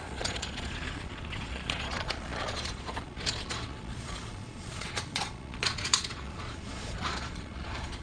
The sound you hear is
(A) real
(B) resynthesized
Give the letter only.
B